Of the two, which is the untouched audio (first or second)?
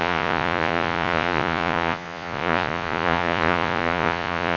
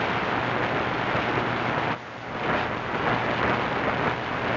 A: second